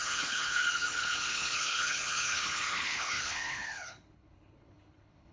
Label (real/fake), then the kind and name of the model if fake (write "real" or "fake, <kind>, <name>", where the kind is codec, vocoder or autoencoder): fake, codec, HILCodec